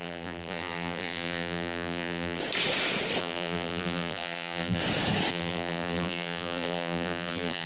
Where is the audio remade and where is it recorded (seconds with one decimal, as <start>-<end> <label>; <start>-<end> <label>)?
0.0-2.4 remade; 2.4-3.2 recorded; 3.2-4.8 remade; 4.8-5.3 recorded; 5.3-7.7 remade